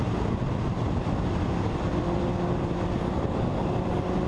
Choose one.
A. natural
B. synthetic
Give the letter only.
A